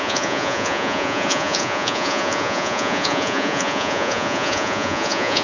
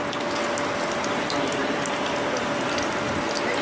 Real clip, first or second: second